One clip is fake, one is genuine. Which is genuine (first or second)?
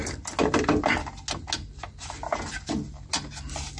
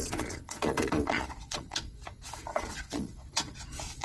first